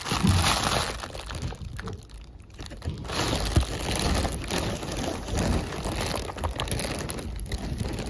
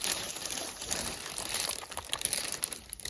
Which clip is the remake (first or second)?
second